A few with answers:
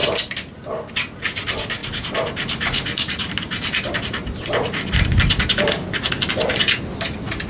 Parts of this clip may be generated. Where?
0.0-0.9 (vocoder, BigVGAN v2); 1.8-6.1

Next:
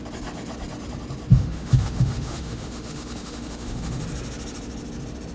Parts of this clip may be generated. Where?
1.3-4.0 (autoencoder, DAC-VAE)

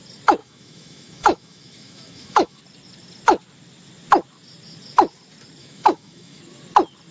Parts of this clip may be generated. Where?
0.4-2.6 (autoencoder, DAC-VAE); 5.6-6.4

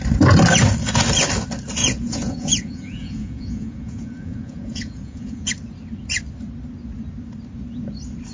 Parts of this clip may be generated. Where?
1.8-5.5 (vocoder, Vocos)

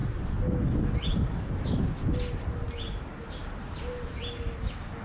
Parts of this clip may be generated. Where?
3.4-4.1 (vocoder, BigVGAN v2)